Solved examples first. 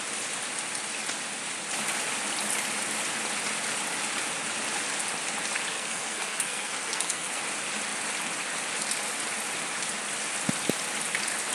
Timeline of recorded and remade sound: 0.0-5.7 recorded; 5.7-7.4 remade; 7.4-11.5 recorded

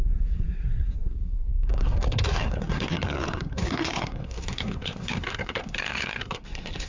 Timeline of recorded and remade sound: 0.0-6.9 remade